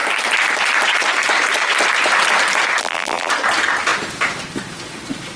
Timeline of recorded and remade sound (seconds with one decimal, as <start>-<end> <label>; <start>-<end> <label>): 0.0-2.8 recorded; 2.8-3.3 remade; 3.3-5.4 recorded